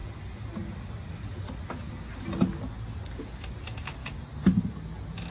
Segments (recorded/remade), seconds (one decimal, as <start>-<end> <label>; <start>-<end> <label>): 0.0-5.3 recorded

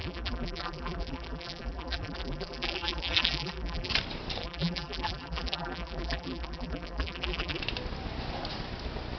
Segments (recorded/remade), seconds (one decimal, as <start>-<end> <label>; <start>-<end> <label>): 0.0-3.9 remade; 3.9-4.4 recorded; 4.4-7.6 remade; 7.6-9.2 recorded

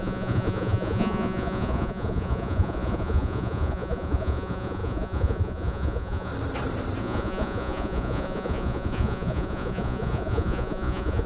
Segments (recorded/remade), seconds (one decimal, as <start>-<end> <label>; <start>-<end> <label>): 0.0-6.3 remade; 6.3-7.0 recorded; 7.0-11.3 remade

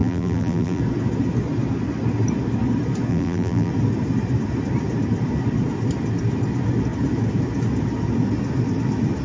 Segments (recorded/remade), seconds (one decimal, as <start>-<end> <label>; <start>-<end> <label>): 0.0-0.8 remade; 0.8-3.1 recorded; 3.1-3.7 remade; 3.7-9.2 recorded

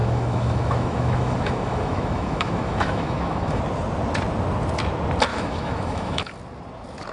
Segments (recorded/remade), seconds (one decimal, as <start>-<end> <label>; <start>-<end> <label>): 0.0-3.6 remade; 3.6-5.3 recorded; 5.3-6.3 remade; 6.3-7.1 recorded

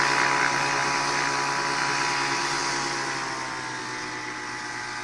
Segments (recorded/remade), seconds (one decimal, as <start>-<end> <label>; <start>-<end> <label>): 0.0-5.0 recorded